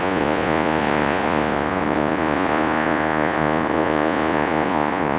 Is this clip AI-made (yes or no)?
yes